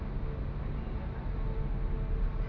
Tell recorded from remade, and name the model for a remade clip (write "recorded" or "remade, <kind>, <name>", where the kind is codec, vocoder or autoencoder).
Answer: recorded